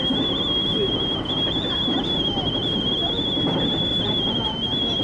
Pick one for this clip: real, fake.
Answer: real